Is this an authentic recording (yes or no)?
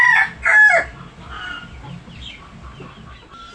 yes